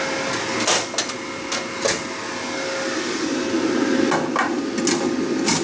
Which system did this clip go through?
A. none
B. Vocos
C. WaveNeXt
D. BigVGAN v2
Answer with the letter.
A